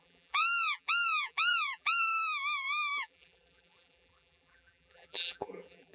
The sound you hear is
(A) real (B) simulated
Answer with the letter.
B